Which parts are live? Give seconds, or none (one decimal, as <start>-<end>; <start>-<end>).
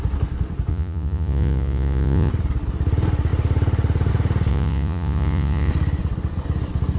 0.0-0.7; 2.3-4.5; 5.7-7.0